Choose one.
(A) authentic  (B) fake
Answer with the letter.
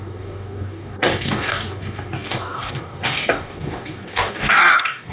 B